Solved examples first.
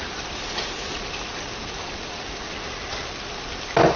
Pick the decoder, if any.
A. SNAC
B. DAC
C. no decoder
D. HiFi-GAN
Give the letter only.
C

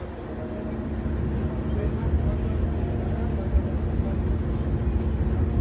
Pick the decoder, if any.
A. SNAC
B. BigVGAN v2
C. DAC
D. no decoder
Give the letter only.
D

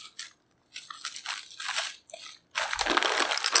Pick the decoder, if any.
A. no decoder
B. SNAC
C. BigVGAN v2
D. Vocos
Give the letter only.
A